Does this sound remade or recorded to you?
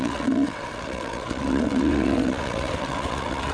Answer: remade